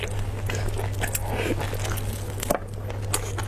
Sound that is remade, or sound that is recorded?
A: recorded